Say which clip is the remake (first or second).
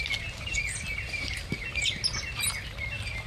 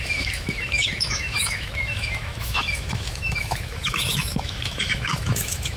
second